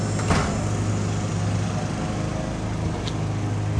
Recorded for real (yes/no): yes